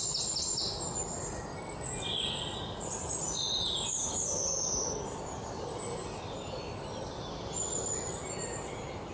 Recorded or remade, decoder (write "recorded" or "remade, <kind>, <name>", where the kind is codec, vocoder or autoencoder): recorded